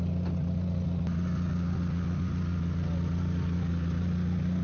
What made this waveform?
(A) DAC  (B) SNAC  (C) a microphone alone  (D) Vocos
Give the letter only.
C